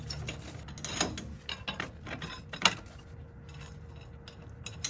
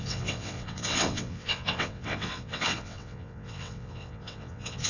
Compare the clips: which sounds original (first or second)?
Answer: first